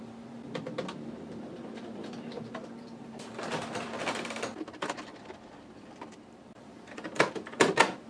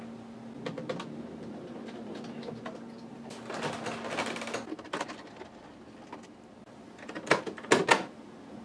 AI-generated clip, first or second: first